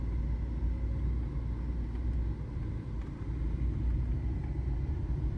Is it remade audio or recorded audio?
recorded